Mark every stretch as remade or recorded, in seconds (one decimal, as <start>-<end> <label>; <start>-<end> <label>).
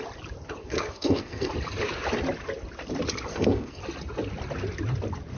0.0-0.6 recorded; 0.6-1.5 remade; 1.5-3.3 recorded; 3.3-3.8 remade; 3.8-5.4 recorded